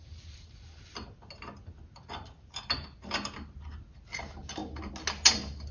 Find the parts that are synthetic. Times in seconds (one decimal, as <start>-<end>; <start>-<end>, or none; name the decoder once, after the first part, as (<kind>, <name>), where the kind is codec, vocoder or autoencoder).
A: none